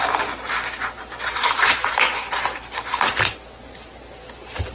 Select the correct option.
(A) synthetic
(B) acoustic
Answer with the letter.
B